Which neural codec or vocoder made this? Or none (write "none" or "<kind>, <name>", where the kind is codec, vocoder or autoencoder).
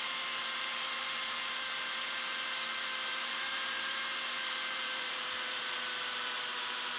vocoder, BigVGAN v2